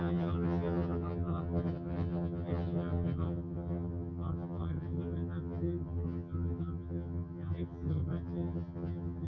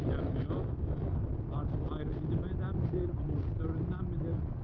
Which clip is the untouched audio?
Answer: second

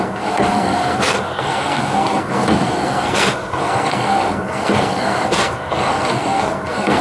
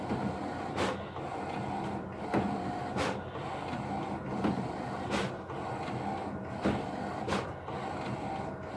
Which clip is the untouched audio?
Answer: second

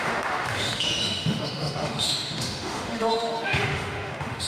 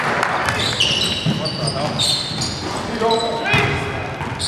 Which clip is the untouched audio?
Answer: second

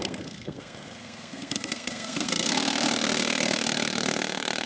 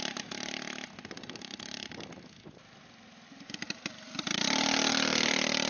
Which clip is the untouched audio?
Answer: second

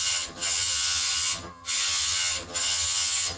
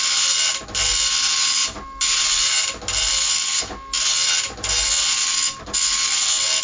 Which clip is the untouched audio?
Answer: second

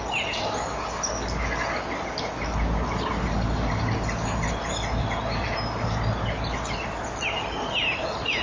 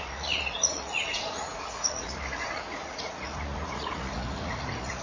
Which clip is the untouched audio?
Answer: first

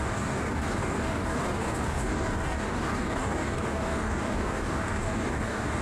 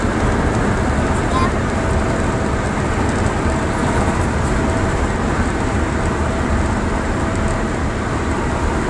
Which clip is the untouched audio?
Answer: second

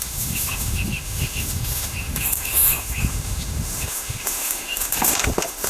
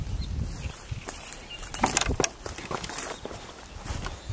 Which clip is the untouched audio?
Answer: second